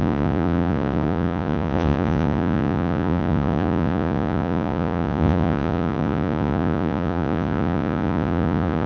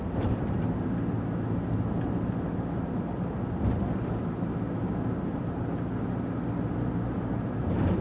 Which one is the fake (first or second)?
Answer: first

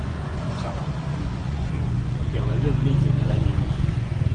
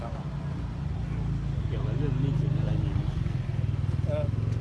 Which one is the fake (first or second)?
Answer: first